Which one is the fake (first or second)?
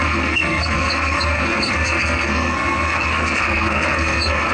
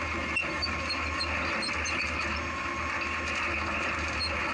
first